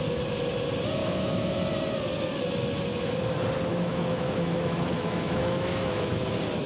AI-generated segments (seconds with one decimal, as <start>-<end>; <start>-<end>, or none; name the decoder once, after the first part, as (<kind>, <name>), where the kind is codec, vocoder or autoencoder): 1.0-1.6 (autoencoder, DAC-VAE); 3.7-6.3